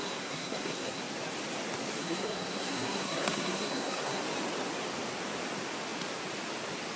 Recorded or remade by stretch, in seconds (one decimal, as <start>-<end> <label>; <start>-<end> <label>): 0.0-1.0 remade; 1.0-2.0 recorded; 2.0-4.2 remade; 4.2-7.0 recorded